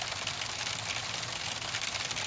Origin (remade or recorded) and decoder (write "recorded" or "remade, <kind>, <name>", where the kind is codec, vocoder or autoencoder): recorded